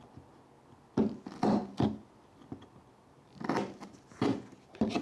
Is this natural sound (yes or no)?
yes